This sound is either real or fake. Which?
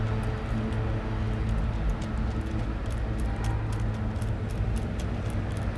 real